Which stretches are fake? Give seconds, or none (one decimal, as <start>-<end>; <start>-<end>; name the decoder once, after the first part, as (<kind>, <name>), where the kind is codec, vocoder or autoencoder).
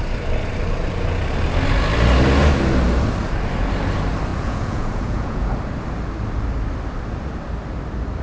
4.3-5.5 (vocoder, Vocos)